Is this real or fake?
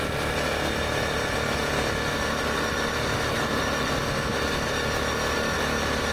real